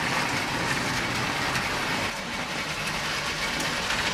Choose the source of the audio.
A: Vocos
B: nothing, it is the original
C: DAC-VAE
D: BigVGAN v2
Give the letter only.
B